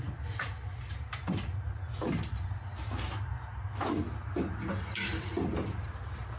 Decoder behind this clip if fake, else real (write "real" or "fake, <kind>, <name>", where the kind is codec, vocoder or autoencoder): real